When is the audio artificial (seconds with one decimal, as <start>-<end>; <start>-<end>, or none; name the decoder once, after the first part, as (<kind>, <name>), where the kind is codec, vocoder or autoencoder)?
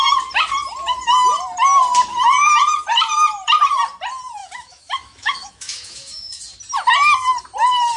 4.4-6.4 (autoencoder, DAC-VAE)